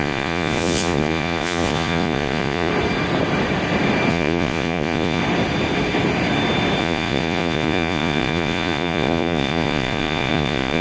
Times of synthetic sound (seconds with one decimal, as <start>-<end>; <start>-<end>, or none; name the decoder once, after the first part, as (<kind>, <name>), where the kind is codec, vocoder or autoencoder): 0.0-2.7 (vocoder, Vocos); 4.1-5.2; 6.8-10.8